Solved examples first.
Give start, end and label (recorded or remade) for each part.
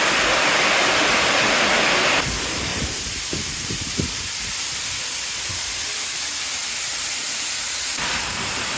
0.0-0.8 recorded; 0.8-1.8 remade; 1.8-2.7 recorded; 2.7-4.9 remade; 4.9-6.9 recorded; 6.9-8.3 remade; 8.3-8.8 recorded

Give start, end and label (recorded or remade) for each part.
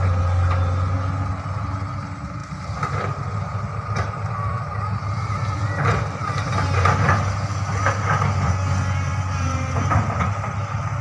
0.0-2.4 recorded; 2.4-6.5 remade; 6.5-11.0 recorded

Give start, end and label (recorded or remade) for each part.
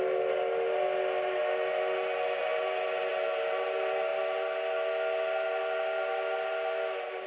0.0-7.3 recorded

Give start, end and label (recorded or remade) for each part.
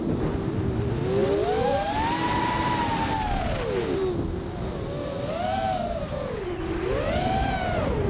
0.0-8.1 recorded